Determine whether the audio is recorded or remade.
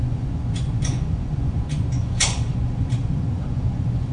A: remade